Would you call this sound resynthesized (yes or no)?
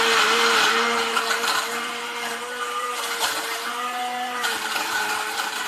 yes